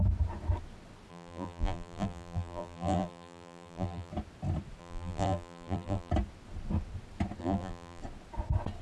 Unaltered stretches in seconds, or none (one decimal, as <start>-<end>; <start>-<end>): 0.0-1.1; 4.1-4.8; 6.1-7.4; 8.0-8.8